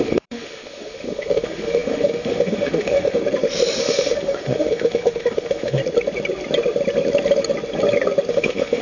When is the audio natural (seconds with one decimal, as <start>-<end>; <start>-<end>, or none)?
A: 3.2-3.8; 5.8-8.3